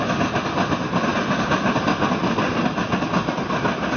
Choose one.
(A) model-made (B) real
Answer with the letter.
B